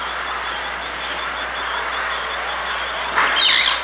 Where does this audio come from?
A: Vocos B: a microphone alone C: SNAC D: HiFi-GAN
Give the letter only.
B